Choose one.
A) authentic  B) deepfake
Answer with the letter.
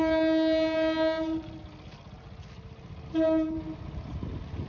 A